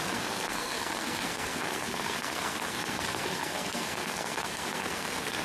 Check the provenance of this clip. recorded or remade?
remade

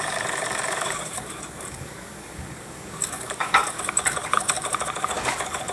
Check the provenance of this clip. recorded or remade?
remade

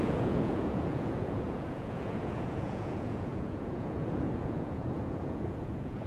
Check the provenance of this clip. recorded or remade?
remade